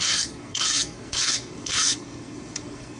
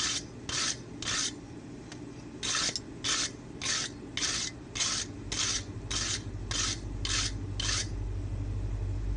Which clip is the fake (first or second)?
first